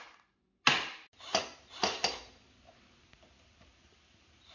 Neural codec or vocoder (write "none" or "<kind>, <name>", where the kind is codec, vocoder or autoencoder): none